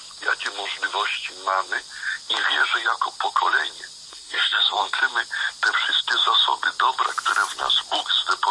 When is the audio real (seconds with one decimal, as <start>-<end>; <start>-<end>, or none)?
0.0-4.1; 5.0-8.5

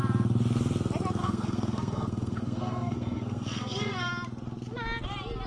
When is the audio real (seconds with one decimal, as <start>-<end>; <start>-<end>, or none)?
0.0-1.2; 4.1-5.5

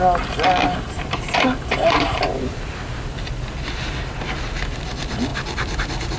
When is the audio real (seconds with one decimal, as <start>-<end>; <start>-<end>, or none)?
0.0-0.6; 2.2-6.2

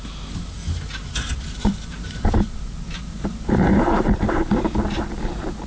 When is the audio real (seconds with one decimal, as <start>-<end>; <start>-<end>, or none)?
0.0-1.3; 4.7-5.7

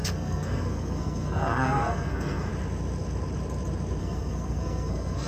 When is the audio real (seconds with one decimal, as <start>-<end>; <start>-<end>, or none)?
2.5-4.0

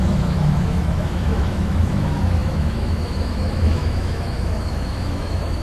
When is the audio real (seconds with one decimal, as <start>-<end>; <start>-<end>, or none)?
none

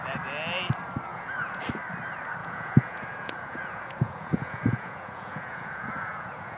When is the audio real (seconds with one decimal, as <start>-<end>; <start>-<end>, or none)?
0.0-1.1; 1.6-2.4